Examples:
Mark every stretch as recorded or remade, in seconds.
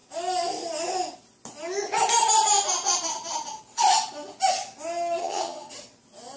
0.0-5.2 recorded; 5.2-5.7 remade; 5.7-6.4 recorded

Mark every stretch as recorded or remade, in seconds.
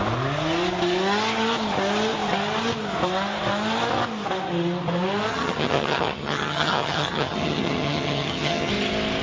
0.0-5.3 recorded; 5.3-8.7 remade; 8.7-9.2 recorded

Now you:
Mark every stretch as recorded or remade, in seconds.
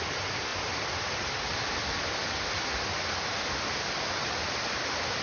0.0-5.2 recorded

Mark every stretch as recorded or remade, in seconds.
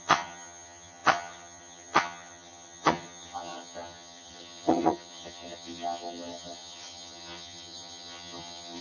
0.0-8.8 remade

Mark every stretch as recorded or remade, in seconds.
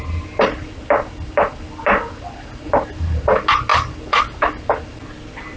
0.0-5.6 recorded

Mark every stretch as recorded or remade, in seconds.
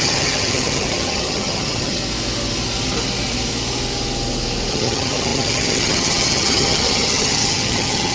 0.0-2.0 remade; 2.0-4.7 recorded; 4.7-8.1 remade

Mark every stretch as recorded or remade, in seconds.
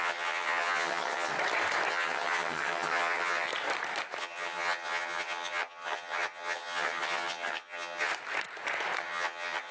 0.0-1.3 remade; 1.3-1.9 recorded; 1.9-3.5 remade; 3.5-4.2 recorded; 4.2-8.1 remade; 8.1-9.0 recorded; 9.0-9.7 remade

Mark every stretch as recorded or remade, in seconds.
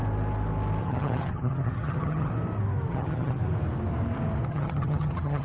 0.0-0.8 recorded; 0.8-2.3 remade; 2.3-2.9 recorded; 2.9-3.4 remade; 3.4-4.5 recorded; 4.5-5.4 remade